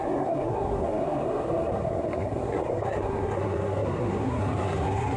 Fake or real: fake